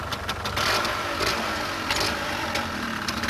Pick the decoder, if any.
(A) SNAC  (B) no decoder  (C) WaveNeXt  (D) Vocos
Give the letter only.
B